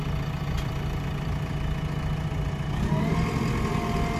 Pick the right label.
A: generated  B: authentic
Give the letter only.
B